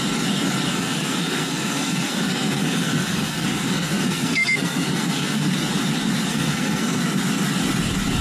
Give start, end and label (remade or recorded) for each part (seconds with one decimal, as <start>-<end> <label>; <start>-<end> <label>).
0.0-0.7 recorded; 0.7-5.5 remade; 5.5-6.3 recorded; 6.3-7.0 remade; 7.0-8.2 recorded

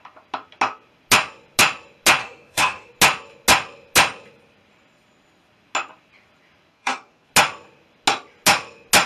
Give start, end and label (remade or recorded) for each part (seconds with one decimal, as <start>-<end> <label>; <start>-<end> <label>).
0.0-2.2 recorded; 2.2-2.9 remade; 2.9-6.7 recorded; 6.7-7.3 remade; 7.3-9.1 recorded

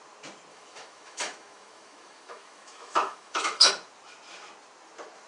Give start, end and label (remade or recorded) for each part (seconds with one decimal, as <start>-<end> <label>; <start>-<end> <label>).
0.0-0.5 recorded; 0.5-3.7 remade; 3.7-5.3 recorded